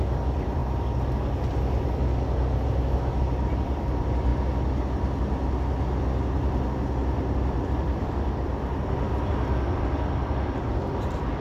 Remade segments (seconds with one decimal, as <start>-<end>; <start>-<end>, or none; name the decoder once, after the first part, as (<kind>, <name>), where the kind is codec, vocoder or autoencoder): 0.0-0.6 (vocoder, BigVGAN v2); 3.2-4.3; 7.6-9.1; 9.8-11.4

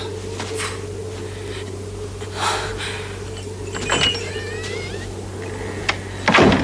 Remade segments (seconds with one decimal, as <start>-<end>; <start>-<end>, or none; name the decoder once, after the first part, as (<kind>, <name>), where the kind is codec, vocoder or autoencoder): none

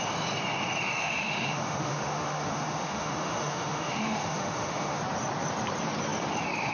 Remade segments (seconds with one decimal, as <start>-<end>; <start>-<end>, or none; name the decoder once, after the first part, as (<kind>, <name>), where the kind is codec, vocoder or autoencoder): 1.0-5.0 (autoencoder, DAC-VAE)